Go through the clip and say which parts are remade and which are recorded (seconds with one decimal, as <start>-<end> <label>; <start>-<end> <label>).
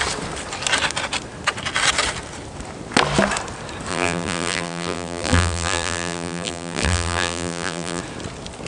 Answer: 0.0-3.9 recorded; 3.9-8.0 remade; 8.0-8.7 recorded